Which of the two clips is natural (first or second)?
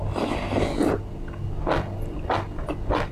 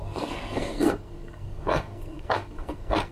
first